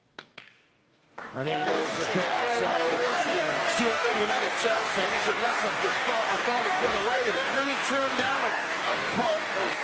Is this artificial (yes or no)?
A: yes